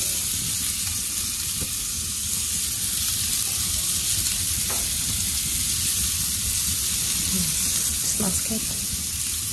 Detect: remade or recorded recorded